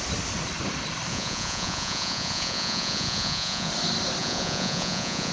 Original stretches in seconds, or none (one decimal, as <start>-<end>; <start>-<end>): 0.0-1.1; 3.7-4.2